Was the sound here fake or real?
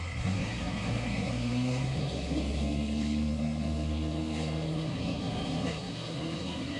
fake